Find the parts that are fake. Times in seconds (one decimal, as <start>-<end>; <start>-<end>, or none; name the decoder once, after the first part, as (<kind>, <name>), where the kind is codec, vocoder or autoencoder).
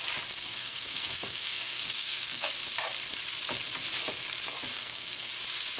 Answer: 0.5-2.5 (codec, SNAC); 4.7-5.3